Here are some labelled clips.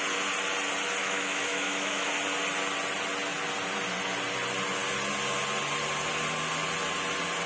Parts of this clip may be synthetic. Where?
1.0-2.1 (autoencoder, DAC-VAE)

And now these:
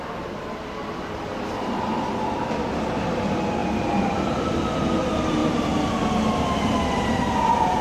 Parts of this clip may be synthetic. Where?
3.6-4.5 (vocoder, BigVGAN v2); 5.4-6.0

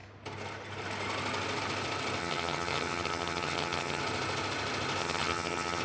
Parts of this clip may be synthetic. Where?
2.2-4.0 (vocoder, HiFi-GAN); 5.0-5.8

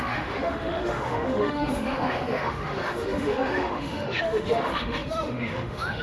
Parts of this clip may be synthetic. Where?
0.0-6.0 (autoencoder, DAC-VAE)

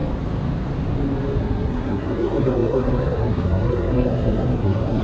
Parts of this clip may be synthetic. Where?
1.4-5.0 (codec, SNAC)

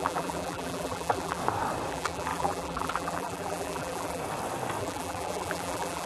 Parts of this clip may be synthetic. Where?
0.0-1.4 (vocoder, BigVGAN v2); 1.9-4.2; 4.8-6.1

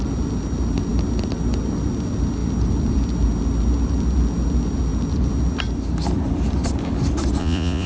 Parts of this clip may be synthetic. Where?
7.4-7.9 (vocoder, Vocos)

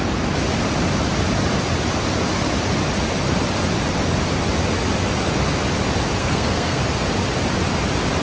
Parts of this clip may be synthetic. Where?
6.2-6.8 (codec, SNAC)